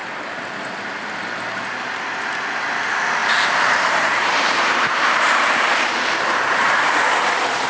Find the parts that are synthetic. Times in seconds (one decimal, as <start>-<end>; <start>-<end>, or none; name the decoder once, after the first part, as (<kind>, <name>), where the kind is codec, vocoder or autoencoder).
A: 3.2-6.9 (vocoder, BigVGAN v2)